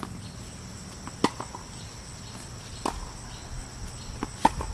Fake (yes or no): no